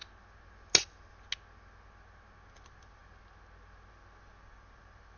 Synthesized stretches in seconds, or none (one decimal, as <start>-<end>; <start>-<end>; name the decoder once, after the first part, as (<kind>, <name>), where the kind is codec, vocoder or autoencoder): 2.5-3.0 (vocoder, BigVGAN v2); 4.2-5.2